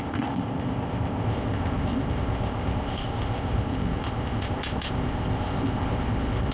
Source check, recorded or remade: remade